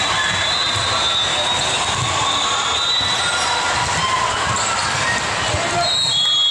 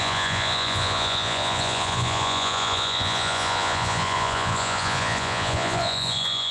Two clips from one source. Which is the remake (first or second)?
second